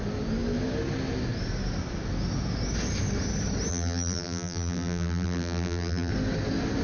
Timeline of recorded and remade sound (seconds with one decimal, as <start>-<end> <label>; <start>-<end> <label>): 0.0-3.7 recorded; 3.7-6.1 remade; 6.1-6.8 recorded